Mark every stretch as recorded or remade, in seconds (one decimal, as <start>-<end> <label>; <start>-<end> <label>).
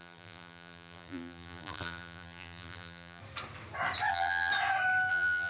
0.0-3.2 remade; 3.2-4.1 recorded; 4.1-4.5 remade; 4.5-5.1 recorded; 5.1-5.5 remade